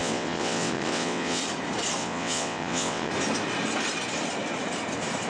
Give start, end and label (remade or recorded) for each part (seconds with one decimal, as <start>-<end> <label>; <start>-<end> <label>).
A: 0.0-1.4 remade; 1.4-2.0 recorded; 2.0-3.1 remade; 3.1-5.3 recorded